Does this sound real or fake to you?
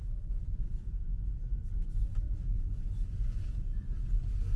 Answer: real